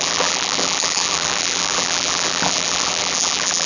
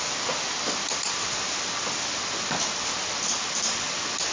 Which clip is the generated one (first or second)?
first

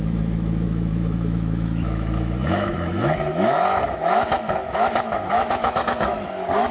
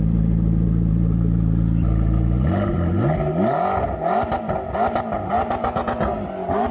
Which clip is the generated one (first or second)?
first